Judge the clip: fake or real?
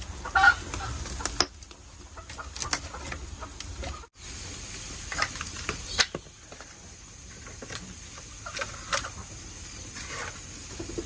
real